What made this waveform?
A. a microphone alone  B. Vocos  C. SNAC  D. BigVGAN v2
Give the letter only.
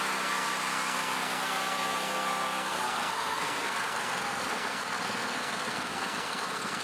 C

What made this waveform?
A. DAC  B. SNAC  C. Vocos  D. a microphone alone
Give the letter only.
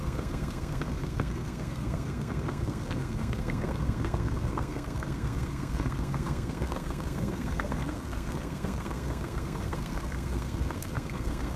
B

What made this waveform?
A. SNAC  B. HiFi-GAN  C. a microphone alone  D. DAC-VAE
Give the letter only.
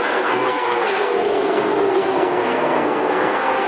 A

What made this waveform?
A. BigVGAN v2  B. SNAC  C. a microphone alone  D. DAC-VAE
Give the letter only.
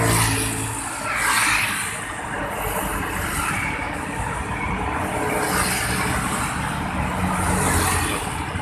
C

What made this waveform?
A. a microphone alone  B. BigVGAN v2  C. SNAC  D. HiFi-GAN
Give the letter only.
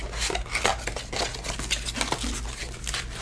A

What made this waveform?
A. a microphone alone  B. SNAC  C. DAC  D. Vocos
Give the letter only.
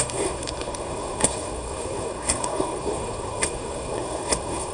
B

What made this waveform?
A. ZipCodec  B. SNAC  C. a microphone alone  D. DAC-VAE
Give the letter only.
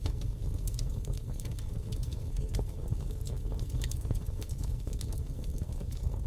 B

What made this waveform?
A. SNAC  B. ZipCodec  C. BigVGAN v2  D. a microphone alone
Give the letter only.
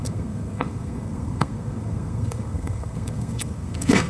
A